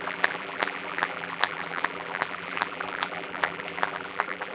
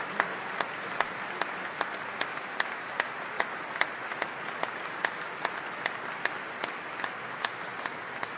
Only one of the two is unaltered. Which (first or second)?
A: second